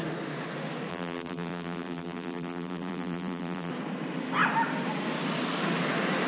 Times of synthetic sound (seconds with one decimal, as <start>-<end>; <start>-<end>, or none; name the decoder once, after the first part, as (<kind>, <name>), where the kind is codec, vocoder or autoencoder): 0.9-3.7 (vocoder, BigVGAN v2)

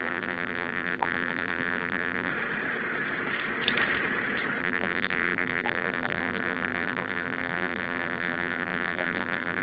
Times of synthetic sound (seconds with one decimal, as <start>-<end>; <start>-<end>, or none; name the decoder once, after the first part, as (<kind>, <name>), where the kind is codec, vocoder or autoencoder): 0.0-2.3 (vocoder, BigVGAN v2); 4.6-9.6

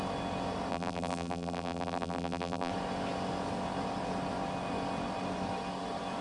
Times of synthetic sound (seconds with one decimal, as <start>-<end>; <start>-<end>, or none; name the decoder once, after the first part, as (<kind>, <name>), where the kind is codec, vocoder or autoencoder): 0.7-2.7 (vocoder, BigVGAN v2)

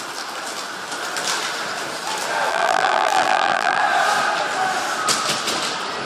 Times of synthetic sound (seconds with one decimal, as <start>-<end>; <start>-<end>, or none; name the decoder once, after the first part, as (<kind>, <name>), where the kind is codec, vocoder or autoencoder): 2.5-3.8 (vocoder, BigVGAN v2)

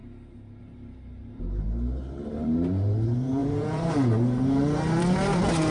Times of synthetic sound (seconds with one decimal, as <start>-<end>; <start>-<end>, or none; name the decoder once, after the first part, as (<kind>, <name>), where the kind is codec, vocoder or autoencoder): 1.6-5.7 (vocoder, BigVGAN v2)

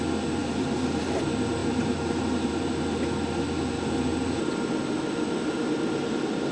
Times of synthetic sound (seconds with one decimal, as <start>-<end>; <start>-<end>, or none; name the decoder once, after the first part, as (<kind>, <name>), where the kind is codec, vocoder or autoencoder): 0.4-1.2 (vocoder, BigVGAN v2); 1.6-2.5

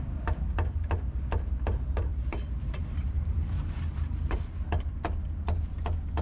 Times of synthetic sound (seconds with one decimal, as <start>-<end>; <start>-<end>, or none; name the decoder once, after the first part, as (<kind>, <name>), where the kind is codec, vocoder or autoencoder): 2.1-5.0 (vocoder, BigVGAN v2)